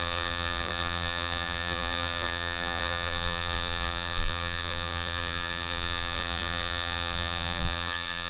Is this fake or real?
fake